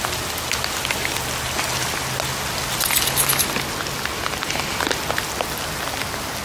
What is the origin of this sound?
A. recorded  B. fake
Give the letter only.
A